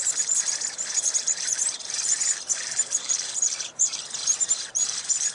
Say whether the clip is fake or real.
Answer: fake